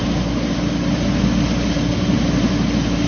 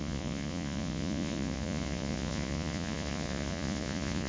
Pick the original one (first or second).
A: first